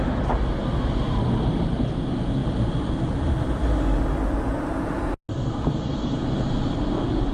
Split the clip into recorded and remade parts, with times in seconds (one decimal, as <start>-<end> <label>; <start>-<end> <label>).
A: 0.0-7.3 recorded